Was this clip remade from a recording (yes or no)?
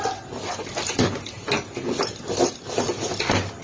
no